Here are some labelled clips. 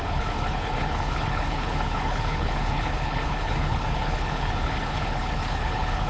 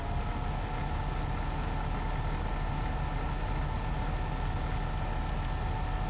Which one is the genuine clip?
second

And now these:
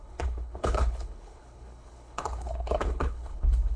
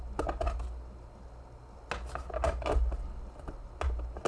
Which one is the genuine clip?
second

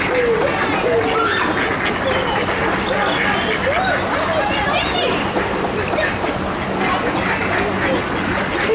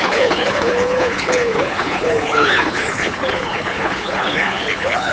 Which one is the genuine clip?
first